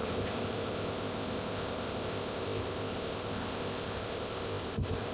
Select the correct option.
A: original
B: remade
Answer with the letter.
B